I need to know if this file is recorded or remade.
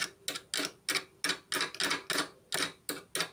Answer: recorded